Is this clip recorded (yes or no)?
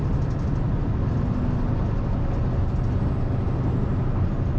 yes